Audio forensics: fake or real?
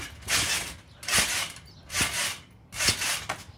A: real